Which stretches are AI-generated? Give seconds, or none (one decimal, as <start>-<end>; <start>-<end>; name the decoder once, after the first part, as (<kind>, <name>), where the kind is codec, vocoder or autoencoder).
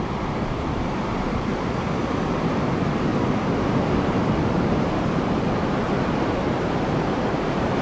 0.0-1.5 (vocoder, BigVGAN v2); 2.7-3.1; 3.9-7.8